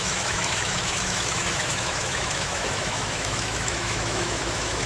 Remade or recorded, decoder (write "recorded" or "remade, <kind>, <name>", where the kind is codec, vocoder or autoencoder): remade, autoencoder, DAC-VAE